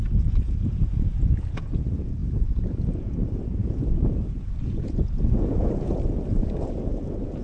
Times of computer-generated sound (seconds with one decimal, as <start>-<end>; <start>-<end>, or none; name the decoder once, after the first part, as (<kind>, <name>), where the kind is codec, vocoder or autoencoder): 0.0-7.4 (vocoder, Vocos)